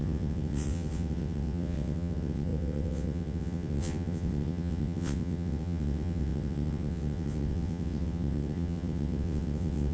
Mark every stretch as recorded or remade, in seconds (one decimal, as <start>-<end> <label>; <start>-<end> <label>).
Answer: 0.0-9.9 remade